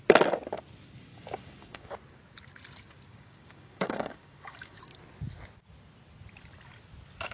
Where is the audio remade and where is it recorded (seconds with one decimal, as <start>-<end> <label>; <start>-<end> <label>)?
0.0-1.1 recorded; 1.1-1.9 remade; 1.9-3.1 recorded; 3.1-4.8 remade; 4.8-7.3 recorded